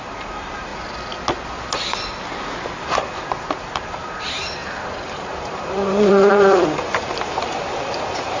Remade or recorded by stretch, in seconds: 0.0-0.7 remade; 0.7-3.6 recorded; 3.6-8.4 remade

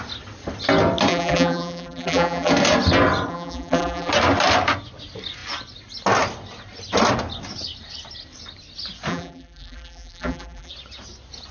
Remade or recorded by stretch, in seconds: 0.0-1.1 recorded; 1.1-2.5 remade; 2.5-3.3 recorded; 3.3-4.1 remade; 4.1-9.1 recorded; 9.1-10.7 remade; 10.7-11.5 recorded

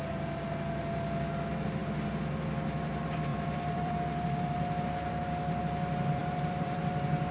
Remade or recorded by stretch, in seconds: 0.0-3.3 recorded; 3.3-4.0 remade; 4.0-6.2 recorded; 6.2-6.8 remade; 6.8-7.3 recorded

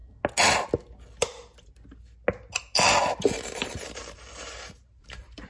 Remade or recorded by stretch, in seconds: 0.0-3.3 recorded; 3.3-5.5 remade

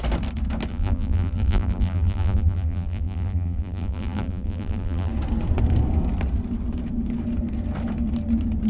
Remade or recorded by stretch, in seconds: 0.0-0.7 recorded; 0.7-5.1 remade; 5.1-8.7 recorded

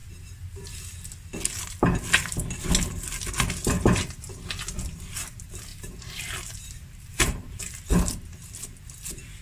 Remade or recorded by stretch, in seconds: 0.0-5.7 recorded; 5.7-7.7 remade; 7.7-9.4 recorded